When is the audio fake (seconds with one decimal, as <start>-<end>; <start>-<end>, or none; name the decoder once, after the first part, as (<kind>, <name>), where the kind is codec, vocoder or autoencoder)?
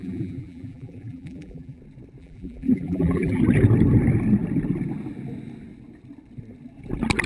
0.0-1.8 (vocoder, BigVGAN v2); 2.2-3.4